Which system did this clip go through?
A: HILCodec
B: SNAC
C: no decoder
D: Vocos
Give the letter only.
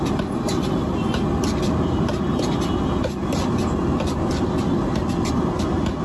C